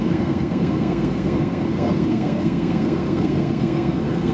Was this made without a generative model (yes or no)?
no